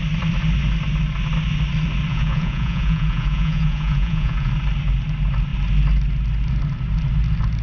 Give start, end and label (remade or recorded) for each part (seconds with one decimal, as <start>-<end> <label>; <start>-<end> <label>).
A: 0.0-2.1 recorded; 2.1-4.5 remade; 4.5-7.6 recorded